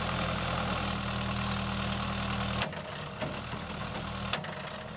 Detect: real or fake real